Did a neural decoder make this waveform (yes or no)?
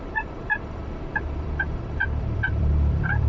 yes